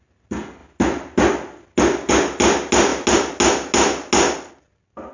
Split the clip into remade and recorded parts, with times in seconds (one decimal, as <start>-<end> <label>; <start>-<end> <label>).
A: 0.0-5.1 recorded